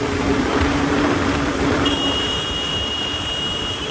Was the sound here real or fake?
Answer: fake